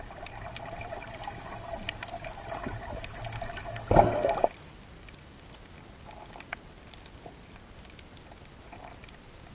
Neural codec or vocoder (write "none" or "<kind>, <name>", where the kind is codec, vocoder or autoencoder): none